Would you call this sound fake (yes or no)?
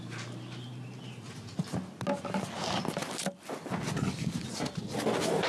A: no